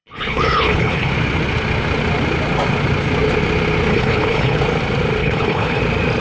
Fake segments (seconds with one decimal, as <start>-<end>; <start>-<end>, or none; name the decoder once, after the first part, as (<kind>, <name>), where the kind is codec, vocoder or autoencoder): 0.0-1.1 (codec, HILCodec); 3.9-4.6; 5.2-5.8